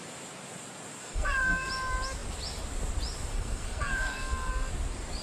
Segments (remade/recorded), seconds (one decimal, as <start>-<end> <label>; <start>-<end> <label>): 0.0-1.0 recorded; 1.0-1.7 remade; 1.7-3.3 recorded; 3.3-4.7 remade; 4.7-5.2 recorded